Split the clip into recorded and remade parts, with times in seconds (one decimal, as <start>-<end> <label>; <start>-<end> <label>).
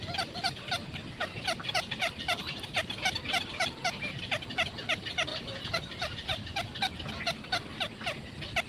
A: 0.0-1.2 recorded; 1.2-4.5 remade; 4.5-5.3 recorded; 5.3-6.9 remade; 6.9-8.7 recorded